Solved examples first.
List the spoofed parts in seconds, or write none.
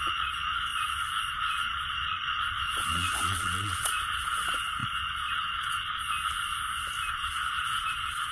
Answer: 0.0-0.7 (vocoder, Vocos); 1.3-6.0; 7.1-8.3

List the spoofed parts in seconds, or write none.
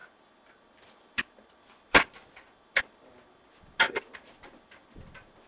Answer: none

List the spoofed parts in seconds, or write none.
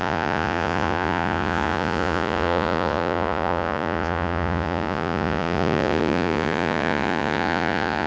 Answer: 0.0-8.1 (vocoder, Vocos)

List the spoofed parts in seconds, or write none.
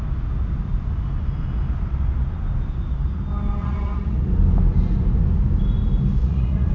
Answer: 3.6-4.2 (vocoder, Vocos); 6.2-6.7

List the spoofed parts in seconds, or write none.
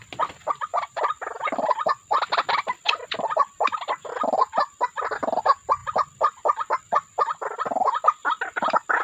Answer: none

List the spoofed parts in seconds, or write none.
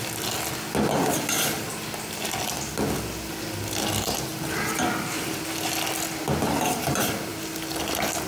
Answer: none